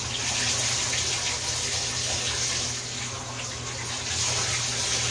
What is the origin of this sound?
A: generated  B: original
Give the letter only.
B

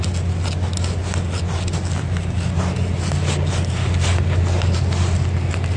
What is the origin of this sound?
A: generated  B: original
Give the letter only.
B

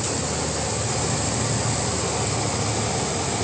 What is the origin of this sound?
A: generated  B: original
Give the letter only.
B